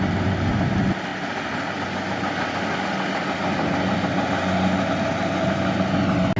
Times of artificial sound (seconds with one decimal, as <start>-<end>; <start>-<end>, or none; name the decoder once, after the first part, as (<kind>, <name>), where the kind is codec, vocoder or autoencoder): none